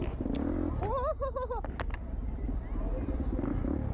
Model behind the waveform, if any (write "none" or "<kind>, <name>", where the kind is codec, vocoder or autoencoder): none